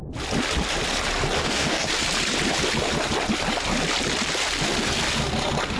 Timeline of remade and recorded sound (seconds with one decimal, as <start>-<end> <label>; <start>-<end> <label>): 0.0-1.4 recorded; 1.4-1.9 remade; 1.9-5.8 recorded